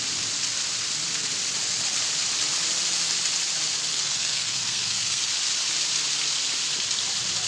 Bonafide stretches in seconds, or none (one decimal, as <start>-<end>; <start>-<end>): 0.0-3.9; 5.2-7.5